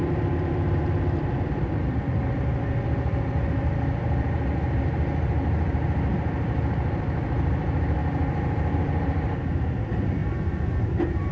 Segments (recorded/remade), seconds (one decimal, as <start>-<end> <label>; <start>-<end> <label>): 0.0-11.3 remade